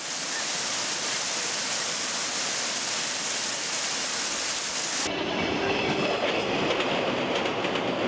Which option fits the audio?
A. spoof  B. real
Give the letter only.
B